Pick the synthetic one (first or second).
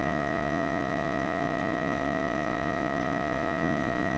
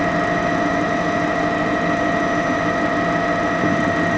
first